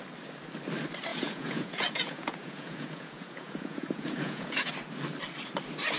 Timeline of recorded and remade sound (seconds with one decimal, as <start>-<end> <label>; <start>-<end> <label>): 0.0-1.1 recorded; 1.1-4.7 remade; 4.7-6.0 recorded